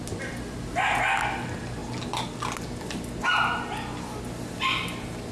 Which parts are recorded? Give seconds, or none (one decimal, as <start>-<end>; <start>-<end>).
0.0-5.3